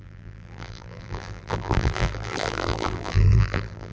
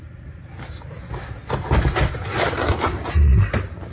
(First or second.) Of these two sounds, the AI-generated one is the first